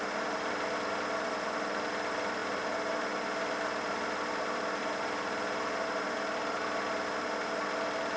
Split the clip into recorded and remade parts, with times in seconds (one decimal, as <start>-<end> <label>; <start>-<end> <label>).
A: 0.0-8.2 recorded